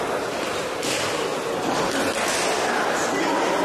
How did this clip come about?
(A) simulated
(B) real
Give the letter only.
B